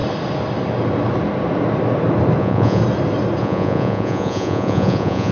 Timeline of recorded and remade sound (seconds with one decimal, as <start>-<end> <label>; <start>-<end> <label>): 0.0-2.4 recorded; 2.4-2.8 remade; 2.8-3.4 recorded; 3.4-5.3 remade